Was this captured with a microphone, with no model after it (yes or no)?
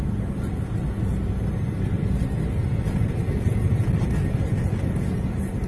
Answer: yes